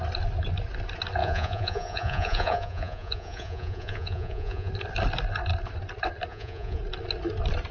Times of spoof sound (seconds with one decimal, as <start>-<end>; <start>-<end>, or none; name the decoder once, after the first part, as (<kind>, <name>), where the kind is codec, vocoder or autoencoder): 1.2-4.7 (vocoder, Vocos); 6.3-6.8